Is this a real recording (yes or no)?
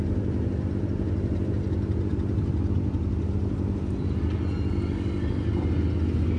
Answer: yes